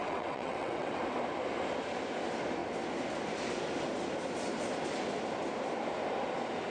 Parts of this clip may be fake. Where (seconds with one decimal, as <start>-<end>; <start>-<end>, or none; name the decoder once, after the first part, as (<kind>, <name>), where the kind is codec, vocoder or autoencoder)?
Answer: 0.0-1.0 (vocoder, WaveNeXt)